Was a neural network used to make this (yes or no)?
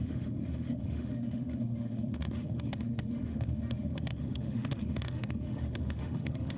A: yes